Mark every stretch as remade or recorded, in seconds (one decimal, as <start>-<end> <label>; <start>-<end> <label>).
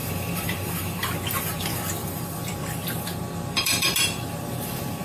0.0-1.0 remade; 1.0-2.0 recorded; 2.0-5.0 remade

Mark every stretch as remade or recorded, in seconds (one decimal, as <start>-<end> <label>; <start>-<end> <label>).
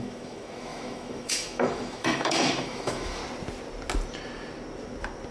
0.0-3.2 remade; 3.2-5.3 recorded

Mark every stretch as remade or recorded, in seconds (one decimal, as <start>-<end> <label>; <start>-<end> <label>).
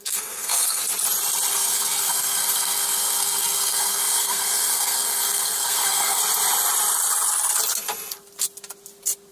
0.0-0.8 remade; 0.8-1.5 recorded; 1.5-6.2 remade; 6.2-9.3 recorded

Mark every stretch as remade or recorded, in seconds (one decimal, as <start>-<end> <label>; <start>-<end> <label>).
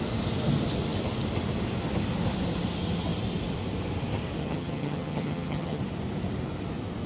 0.0-4.4 recorded; 4.4-5.8 remade; 5.8-7.1 recorded